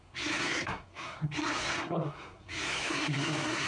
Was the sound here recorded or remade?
remade